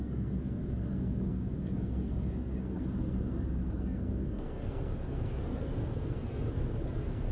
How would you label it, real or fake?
fake